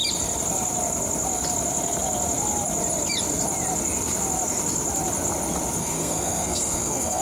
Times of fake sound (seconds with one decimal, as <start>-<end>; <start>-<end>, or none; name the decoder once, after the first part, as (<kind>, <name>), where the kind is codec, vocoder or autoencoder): 5.8-7.2 (codec, SNAC)